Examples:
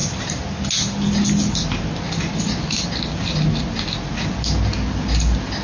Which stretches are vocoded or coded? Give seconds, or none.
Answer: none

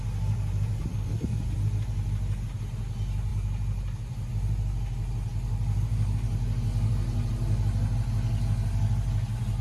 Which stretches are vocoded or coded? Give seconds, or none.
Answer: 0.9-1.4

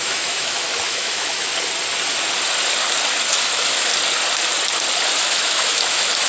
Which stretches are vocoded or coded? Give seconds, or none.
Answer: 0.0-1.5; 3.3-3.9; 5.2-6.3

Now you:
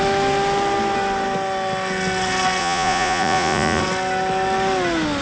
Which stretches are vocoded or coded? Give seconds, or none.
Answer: 2.6-3.8

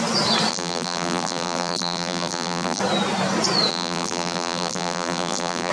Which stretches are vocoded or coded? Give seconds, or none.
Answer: 0.5-2.8; 3.7-5.7

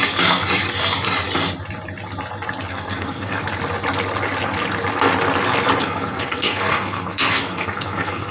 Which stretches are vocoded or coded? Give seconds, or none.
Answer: 2.7-3.4; 5.8-8.3